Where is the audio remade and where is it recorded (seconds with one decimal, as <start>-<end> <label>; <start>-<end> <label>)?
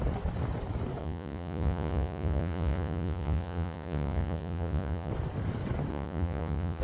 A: 0.0-1.0 recorded; 1.0-5.1 remade; 5.1-5.9 recorded; 5.9-6.8 remade